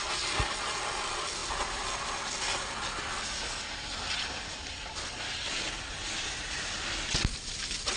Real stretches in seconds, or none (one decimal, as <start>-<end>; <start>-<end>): 0.0-8.0

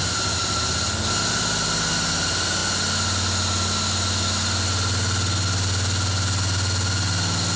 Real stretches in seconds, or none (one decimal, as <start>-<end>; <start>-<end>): 0.0-7.6

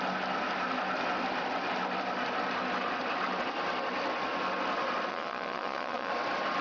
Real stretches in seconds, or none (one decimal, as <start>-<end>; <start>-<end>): 0.0-5.1; 6.1-6.6